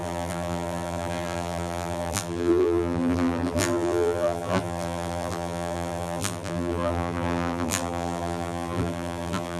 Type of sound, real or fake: fake